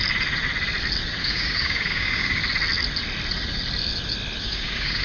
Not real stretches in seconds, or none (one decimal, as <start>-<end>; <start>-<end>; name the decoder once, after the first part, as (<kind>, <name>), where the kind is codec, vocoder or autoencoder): 1.2-2.4 (codec, DAC); 4.4-5.0